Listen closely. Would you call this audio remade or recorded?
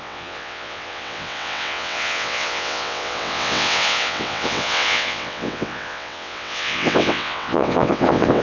remade